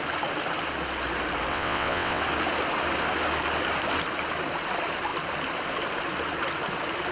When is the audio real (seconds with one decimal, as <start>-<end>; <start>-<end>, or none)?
0.0-1.5; 2.2-7.1